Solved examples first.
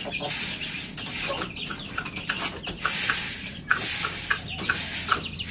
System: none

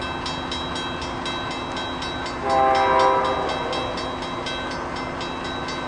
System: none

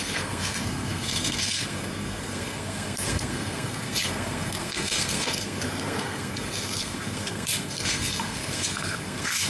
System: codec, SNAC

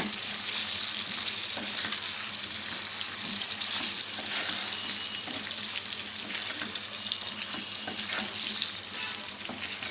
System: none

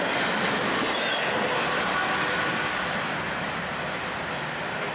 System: none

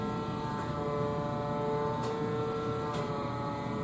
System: none